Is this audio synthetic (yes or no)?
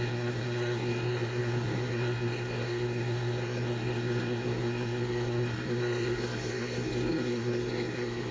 yes